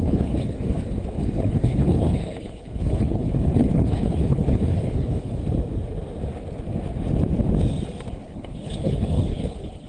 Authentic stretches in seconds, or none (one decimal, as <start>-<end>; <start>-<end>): 5.4-8.1